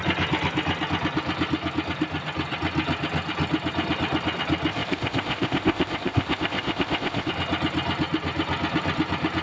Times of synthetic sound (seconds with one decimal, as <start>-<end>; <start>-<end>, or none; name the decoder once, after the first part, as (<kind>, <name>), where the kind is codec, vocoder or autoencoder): 4.7-7.3 (codec, ZipCodec)